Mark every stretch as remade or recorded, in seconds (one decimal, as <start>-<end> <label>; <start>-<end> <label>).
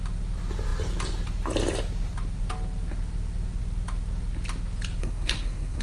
0.0-5.0 recorded; 5.0-5.8 remade